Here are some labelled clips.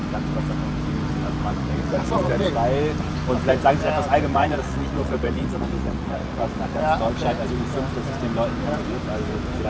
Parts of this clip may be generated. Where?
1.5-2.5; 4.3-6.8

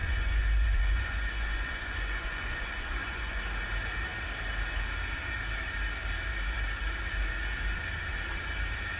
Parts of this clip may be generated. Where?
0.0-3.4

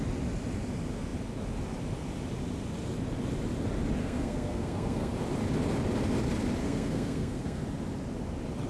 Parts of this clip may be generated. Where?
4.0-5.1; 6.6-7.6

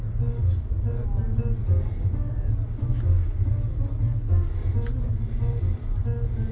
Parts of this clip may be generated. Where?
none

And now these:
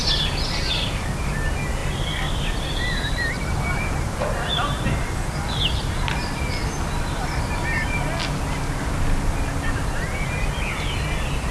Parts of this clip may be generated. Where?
none

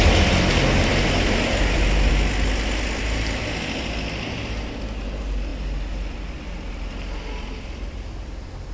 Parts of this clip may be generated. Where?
none

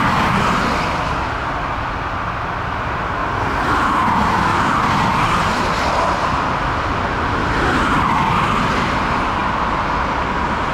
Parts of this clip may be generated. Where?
none